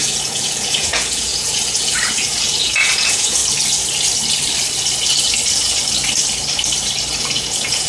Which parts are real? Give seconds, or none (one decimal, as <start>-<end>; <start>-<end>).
3.4-7.2